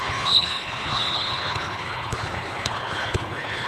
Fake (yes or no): yes